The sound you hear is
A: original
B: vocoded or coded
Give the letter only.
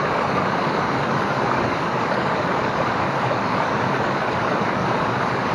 B